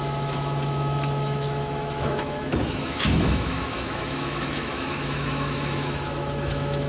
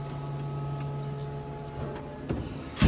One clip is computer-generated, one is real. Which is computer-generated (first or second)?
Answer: first